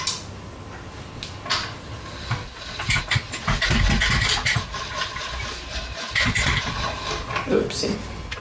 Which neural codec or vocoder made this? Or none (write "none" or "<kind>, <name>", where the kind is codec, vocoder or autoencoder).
none